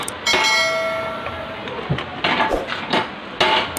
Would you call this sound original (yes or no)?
yes